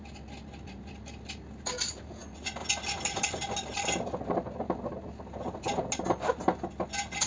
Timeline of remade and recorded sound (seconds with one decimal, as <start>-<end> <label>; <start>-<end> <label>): 0.0-7.3 recorded